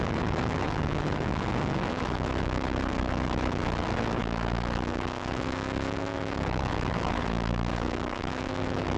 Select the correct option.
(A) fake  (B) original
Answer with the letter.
A